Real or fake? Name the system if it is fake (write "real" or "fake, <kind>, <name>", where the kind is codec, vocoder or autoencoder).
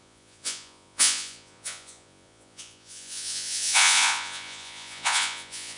fake, vocoder, Vocos